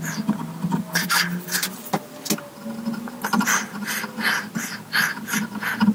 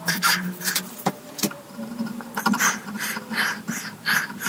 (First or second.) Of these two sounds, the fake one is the second